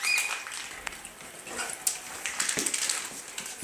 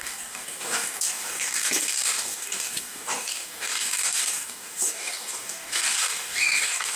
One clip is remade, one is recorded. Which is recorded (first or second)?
first